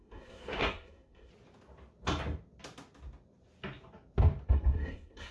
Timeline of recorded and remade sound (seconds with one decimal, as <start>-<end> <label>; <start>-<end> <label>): 0.0-1.3 remade; 1.3-4.5 recorded; 4.5-5.3 remade